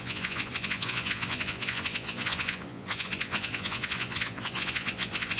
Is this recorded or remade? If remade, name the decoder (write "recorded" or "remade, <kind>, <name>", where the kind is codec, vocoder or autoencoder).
remade, vocoder, Vocos